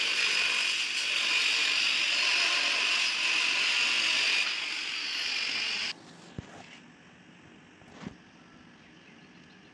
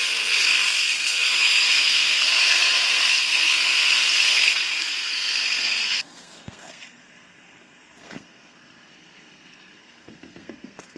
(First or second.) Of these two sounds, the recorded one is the first